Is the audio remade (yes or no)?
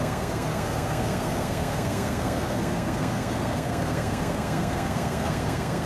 yes